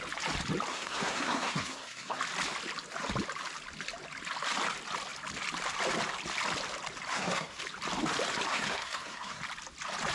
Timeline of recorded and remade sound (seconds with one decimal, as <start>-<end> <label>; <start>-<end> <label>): 0.0-0.7 recorded; 0.7-2.2 remade; 2.2-7.1 recorded; 7.1-7.6 remade; 7.6-8.5 recorded; 8.5-9.4 remade; 9.4-10.1 recorded